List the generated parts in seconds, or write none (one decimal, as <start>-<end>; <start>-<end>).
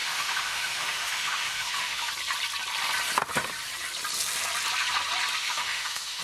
0.0-2.1; 5.4-6.2